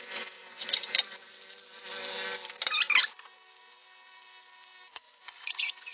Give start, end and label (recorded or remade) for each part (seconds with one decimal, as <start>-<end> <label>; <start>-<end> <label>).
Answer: 0.0-1.4 remade; 1.4-4.9 recorded; 4.9-5.9 remade